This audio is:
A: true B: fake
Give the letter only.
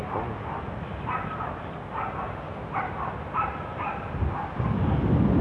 A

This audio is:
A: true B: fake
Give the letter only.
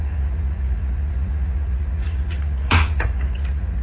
B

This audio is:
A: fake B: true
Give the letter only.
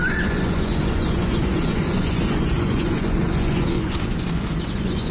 A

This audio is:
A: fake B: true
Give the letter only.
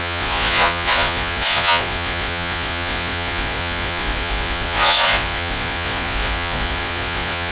A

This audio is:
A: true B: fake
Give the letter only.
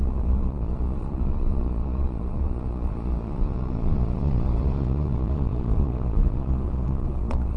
B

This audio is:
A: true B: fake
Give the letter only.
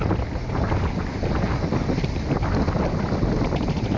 A